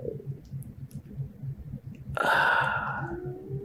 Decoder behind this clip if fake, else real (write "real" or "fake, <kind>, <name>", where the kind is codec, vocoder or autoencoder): real